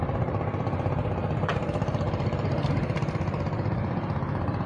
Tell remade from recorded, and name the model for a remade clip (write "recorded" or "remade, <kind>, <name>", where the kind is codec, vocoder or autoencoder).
remade, vocoder, BigVGAN v2